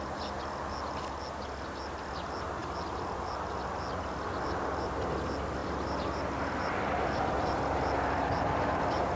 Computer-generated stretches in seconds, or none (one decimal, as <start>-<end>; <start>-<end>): 5.6-7.6